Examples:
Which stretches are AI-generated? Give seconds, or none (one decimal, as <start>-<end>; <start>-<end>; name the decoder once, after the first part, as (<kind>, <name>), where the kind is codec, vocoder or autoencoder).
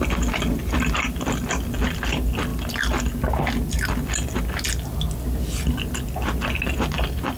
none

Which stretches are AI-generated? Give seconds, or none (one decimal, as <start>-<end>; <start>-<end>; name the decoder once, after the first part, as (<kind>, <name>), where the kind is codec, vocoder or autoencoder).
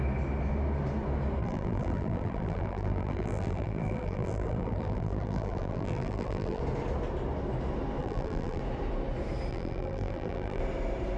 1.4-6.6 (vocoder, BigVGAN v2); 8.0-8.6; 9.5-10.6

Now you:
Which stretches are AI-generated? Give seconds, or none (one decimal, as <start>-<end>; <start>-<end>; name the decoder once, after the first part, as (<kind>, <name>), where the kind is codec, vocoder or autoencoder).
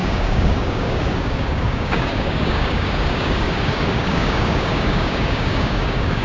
0.0-6.2 (codec, DAC)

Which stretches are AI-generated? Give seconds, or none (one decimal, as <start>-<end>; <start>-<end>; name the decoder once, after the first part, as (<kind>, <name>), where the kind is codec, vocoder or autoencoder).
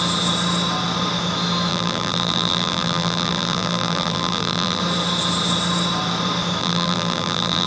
1.7-4.8 (vocoder, BigVGAN v2); 6.6-7.7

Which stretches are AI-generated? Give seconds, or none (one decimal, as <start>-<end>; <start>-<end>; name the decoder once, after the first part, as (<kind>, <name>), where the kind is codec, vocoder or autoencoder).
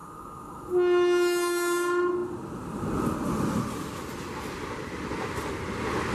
none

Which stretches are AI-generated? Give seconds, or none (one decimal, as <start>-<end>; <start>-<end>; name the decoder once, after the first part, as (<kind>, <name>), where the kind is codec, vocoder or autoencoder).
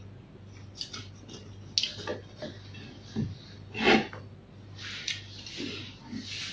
none